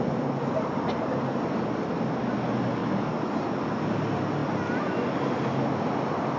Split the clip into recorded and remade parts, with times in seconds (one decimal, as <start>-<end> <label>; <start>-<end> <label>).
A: 0.0-6.4 recorded

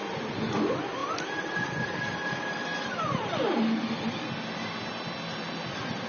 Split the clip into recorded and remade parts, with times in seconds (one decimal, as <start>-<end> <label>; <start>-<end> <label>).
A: 0.0-1.0 recorded; 1.0-1.8 remade; 1.8-2.7 recorded; 2.7-3.6 remade; 3.6-6.1 recorded

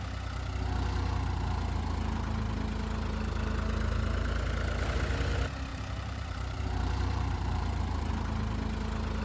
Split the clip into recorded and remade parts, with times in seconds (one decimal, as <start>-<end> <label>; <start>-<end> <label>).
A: 0.0-5.7 recorded; 5.7-8.1 remade; 8.1-9.2 recorded

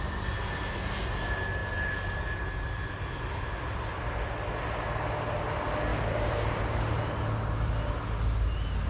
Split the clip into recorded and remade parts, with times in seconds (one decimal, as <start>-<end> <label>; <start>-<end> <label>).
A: 0.0-5.9 recorded; 5.9-6.6 remade; 6.6-8.9 recorded